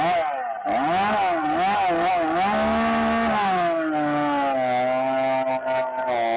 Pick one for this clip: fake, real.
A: real